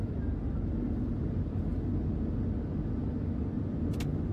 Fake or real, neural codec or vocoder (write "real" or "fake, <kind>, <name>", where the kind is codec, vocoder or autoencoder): real